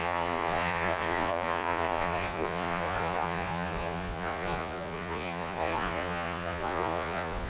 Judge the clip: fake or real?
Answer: fake